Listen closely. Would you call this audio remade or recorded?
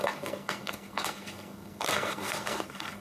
remade